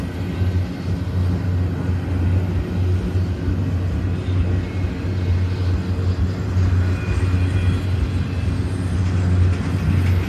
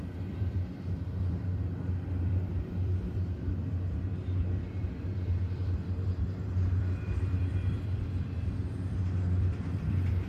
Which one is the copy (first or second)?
second